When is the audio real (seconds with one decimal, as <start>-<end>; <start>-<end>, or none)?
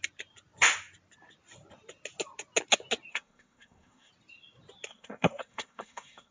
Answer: 0.0-3.1; 4.1-4.9